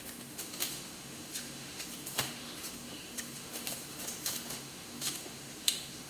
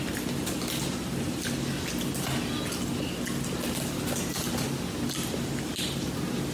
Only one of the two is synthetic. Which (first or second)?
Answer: first